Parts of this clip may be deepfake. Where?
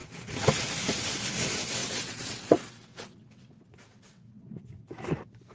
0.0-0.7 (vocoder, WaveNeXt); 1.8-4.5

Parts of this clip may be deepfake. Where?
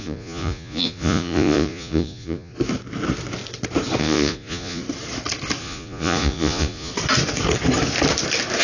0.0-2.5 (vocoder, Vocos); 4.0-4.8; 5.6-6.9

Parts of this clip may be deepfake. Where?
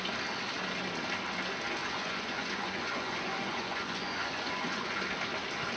1.8-5.0 (vocoder, Vocos)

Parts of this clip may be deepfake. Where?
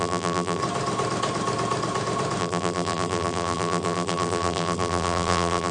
0.0-0.6 (vocoder, BigVGAN v2); 2.4-5.7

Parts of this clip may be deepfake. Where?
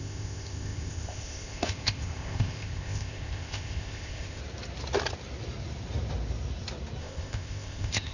0.0-4.4 (codec, ZipCodec); 7.0-8.1